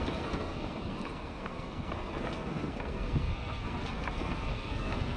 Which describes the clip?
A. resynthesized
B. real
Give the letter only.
A